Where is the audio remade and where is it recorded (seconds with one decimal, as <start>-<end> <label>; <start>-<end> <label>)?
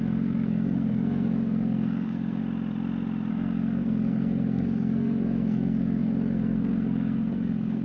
0.0-2.4 remade; 2.4-3.3 recorded; 3.3-7.8 remade